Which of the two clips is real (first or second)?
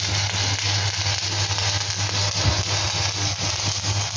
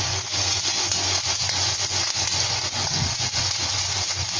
first